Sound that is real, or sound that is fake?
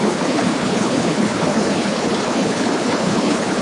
fake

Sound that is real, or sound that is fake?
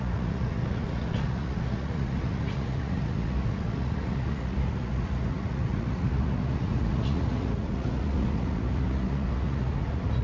fake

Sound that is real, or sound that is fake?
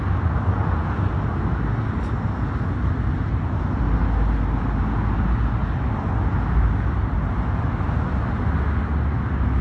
real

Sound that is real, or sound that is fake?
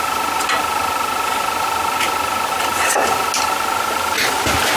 real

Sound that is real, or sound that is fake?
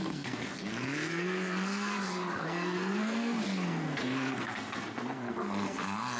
fake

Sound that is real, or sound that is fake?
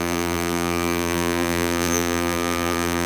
fake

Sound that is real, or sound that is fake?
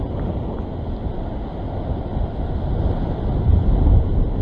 real